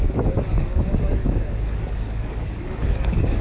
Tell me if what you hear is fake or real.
fake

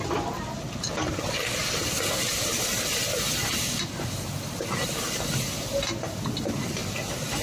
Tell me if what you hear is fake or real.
real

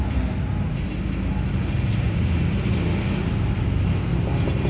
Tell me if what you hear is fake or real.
real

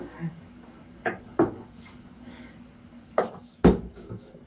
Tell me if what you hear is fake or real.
fake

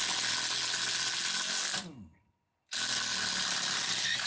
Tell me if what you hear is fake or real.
real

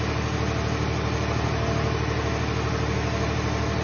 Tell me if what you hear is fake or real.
real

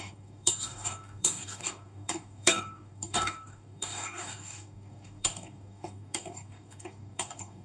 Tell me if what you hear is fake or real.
fake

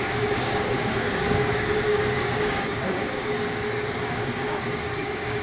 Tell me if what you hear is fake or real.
fake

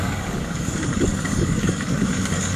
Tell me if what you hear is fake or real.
fake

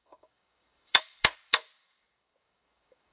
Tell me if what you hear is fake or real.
fake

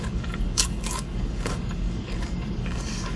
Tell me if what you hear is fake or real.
fake